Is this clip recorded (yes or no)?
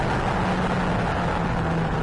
yes